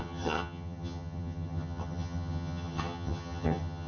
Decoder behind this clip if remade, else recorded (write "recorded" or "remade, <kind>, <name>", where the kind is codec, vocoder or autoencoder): remade, vocoder, HiFi-GAN